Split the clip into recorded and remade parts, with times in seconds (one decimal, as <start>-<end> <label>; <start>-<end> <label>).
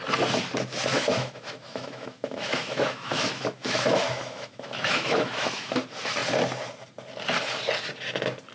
0.0-0.9 recorded; 0.9-5.8 remade; 5.8-8.5 recorded